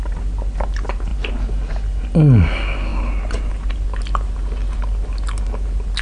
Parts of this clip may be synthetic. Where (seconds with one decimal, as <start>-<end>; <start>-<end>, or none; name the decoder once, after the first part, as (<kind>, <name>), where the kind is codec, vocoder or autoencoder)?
none

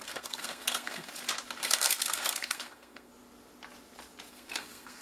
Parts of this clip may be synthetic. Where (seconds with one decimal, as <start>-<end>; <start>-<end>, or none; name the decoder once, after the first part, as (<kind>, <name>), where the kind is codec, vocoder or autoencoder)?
0.0-1.1 (codec, SNAC); 1.6-3.1; 4.3-5.0

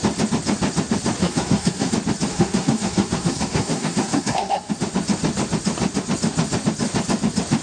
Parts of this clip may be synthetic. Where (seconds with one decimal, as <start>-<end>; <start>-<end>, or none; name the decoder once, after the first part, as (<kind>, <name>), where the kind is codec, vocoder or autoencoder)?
1.2-1.9 (codec, SNAC); 2.3-4.7

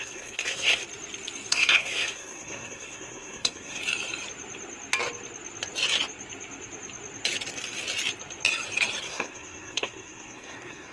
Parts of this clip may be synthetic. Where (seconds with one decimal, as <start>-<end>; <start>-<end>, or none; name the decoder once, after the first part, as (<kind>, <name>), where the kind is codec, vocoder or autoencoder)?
0.0-0.8 (codec, SNAC); 1.5-3.8; 9.0-10.9

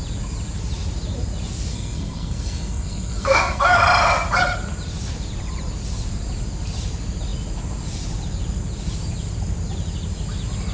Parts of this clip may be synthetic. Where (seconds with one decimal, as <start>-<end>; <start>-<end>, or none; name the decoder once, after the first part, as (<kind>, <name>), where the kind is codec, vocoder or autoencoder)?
1.7-3.8 (codec, SNAC)